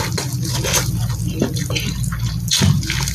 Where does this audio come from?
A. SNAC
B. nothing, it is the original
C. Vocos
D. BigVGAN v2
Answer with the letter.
B